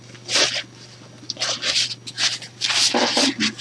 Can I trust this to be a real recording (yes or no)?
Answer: yes